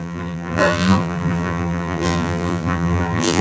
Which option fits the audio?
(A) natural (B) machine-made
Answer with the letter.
B